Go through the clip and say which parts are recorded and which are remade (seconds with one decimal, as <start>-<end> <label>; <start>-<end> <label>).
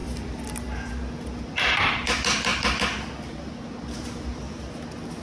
0.0-5.2 recorded